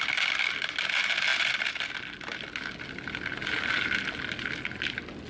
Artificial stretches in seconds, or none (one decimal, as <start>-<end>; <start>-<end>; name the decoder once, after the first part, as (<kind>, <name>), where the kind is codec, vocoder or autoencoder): none